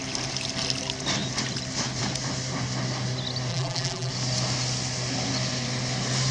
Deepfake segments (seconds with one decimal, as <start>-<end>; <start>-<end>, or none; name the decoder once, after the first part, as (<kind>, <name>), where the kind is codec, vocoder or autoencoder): 3.5-4.1 (vocoder, BigVGAN v2)